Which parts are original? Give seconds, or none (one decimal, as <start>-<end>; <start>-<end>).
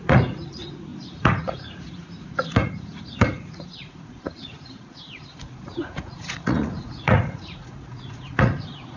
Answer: none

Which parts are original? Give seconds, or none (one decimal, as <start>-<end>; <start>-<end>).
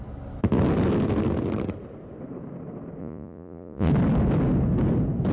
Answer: 0.0-3.0; 3.9-5.3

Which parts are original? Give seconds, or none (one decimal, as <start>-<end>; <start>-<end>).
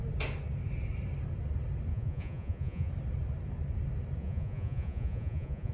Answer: 0.0-1.9; 2.9-4.2